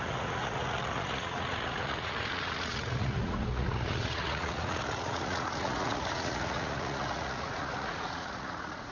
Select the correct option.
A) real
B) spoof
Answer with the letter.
B